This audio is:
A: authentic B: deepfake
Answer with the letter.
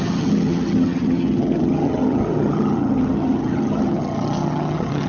B